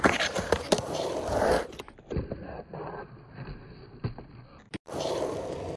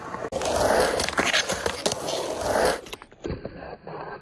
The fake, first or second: first